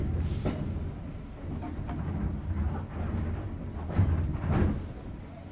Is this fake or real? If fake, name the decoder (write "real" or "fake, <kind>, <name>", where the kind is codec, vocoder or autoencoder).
real